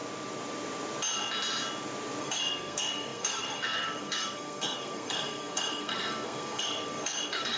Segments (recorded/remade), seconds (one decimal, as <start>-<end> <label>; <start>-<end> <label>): 0.0-2.2 recorded; 2.2-7.6 remade